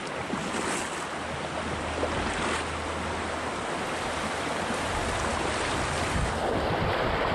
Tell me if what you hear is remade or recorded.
recorded